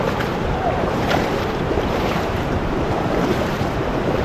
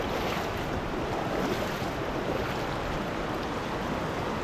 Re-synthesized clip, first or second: first